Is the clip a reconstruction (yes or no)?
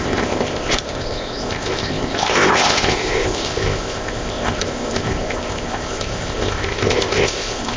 yes